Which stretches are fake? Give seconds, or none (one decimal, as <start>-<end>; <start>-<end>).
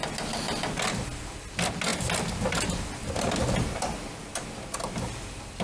none